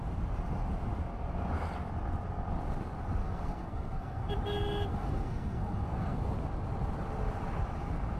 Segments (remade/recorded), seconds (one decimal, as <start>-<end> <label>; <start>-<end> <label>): 0.0-3.2 recorded; 3.2-4.3 remade; 4.3-4.9 recorded; 4.9-6.2 remade; 6.2-8.2 recorded